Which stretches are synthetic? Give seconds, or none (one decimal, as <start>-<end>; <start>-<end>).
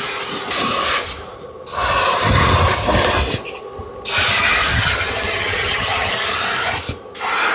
4.7-6.1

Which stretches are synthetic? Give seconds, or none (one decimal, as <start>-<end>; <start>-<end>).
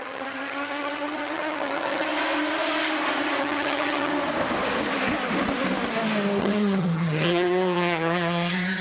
0.0-2.1; 3.4-4.1; 6.4-8.8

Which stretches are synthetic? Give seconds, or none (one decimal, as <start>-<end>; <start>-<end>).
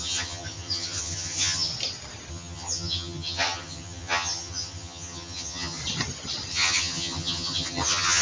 0.0-1.7; 2.3-5.8; 6.5-8.2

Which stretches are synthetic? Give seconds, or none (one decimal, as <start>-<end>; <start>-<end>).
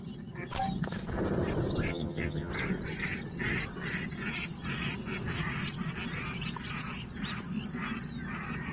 1.9-2.5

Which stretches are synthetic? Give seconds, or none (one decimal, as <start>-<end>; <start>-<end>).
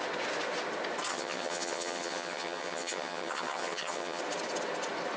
1.1-4.2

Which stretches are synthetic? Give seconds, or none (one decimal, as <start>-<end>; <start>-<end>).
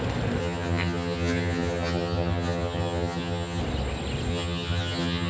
0.4-3.6; 4.3-5.3